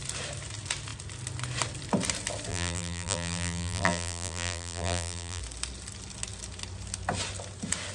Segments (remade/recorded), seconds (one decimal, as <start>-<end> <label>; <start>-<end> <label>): 0.0-2.5 recorded; 2.5-5.4 remade; 5.4-7.9 recorded